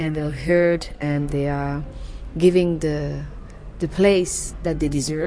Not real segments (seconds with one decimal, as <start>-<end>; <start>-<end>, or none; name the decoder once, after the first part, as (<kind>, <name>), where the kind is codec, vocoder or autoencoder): 0.0-1.3 (codec, SNAC); 4.5-5.3

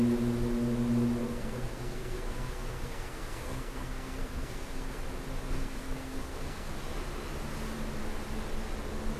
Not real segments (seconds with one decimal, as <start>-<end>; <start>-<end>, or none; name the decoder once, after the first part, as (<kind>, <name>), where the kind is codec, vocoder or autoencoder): 1.2-5.0 (codec, SNAC); 5.6-6.7